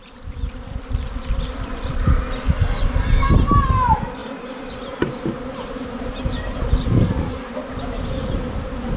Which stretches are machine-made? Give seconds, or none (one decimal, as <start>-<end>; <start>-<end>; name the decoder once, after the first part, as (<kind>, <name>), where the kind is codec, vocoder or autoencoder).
0.0-0.8 (vocoder, BigVGAN v2); 4.2-8.5